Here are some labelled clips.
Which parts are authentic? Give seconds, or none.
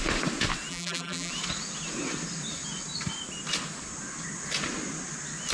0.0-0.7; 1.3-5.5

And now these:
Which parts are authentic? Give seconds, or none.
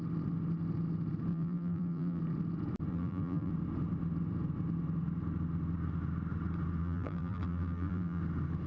0.0-1.3; 2.2-2.9; 3.5-6.8; 8.2-8.7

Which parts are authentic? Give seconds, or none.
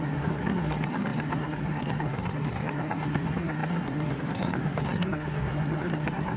none